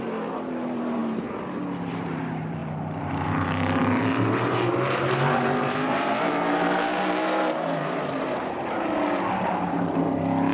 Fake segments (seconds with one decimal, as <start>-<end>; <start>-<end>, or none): 0.0-1.0; 1.9-10.5